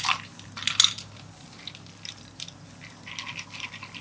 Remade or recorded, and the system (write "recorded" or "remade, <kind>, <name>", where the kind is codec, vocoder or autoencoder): recorded